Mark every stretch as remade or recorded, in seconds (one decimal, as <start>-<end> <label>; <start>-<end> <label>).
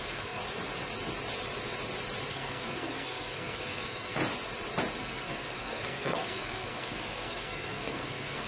0.0-0.4 remade; 0.4-2.3 recorded; 2.3-4.2 remade; 4.2-5.0 recorded; 5.0-8.5 remade